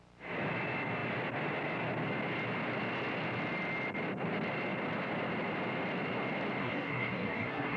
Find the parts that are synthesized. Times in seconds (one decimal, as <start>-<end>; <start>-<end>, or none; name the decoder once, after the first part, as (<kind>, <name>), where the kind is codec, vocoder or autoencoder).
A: 6.6-7.8 (codec, SNAC)

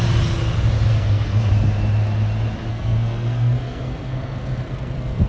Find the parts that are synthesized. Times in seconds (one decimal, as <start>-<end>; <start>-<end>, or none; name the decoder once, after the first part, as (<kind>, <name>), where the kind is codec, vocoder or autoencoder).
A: 0.9-1.5 (codec, SNAC); 2.7-5.3

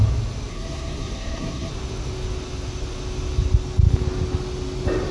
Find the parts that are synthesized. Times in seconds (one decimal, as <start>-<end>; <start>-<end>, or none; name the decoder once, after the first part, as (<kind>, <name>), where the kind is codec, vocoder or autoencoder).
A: 0.5-1.7 (codec, SNAC)

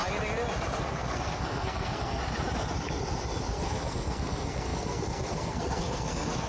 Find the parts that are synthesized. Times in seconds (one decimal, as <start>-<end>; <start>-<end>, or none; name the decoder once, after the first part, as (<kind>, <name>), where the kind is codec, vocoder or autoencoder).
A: 0.8-2.2 (codec, SNAC); 3.5-6.5

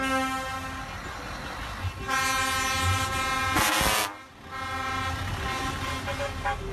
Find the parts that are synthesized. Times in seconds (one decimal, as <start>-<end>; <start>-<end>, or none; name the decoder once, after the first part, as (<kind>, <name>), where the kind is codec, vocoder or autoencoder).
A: none

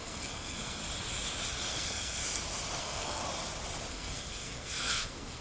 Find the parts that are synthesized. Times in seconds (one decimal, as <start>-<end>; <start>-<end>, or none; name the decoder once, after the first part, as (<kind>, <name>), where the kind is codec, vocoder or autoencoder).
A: 0.0-0.8 (codec, SNAC); 1.7-2.2; 2.8-3.2; 3.9-5.4

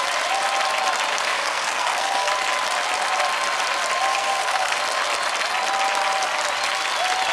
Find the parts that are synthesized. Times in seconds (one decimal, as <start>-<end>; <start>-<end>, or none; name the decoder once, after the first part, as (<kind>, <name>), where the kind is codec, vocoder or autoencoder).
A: 1.1-2.3 (codec, SNAC); 4.1-4.8

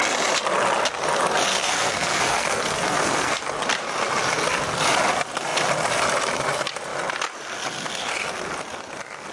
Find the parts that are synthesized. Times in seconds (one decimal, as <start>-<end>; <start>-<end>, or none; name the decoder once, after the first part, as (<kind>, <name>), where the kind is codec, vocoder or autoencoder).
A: 1.5-3.4 (codec, SNAC)